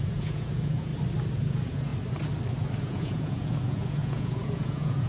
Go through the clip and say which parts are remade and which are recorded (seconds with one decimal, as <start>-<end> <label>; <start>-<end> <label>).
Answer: 0.0-0.9 remade; 0.9-1.4 recorded; 1.4-1.9 remade; 1.9-2.8 recorded; 2.8-5.1 remade